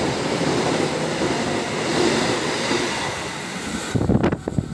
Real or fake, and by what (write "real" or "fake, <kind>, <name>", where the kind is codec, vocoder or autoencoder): real